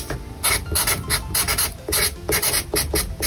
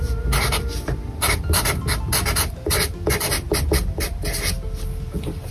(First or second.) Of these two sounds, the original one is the first